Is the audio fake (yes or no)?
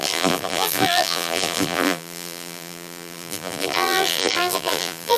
yes